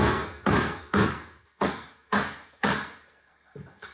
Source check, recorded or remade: remade